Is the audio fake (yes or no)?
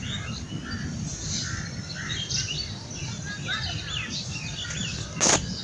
no